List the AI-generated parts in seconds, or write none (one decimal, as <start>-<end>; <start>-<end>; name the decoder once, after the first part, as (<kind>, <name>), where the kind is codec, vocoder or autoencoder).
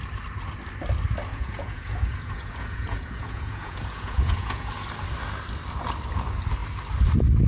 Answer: 1.3-4.7 (vocoder, Vocos)